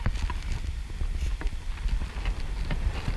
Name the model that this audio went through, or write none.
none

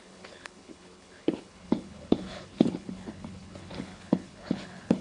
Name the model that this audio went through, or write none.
codec, HILCodec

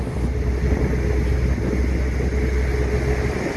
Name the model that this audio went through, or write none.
none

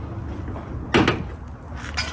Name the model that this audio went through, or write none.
none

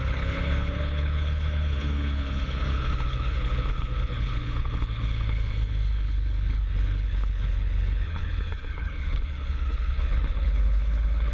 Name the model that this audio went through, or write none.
codec, HILCodec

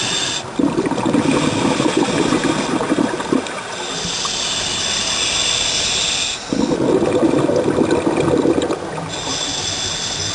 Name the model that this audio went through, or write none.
none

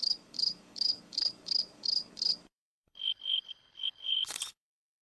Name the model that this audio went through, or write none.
codec, HILCodec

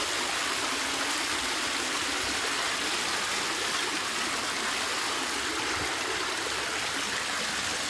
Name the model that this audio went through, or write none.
none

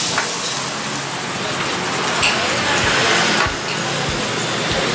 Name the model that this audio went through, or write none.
none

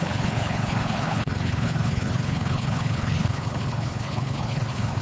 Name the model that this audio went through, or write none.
codec, HILCodec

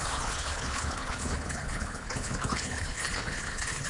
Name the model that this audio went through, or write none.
codec, HILCodec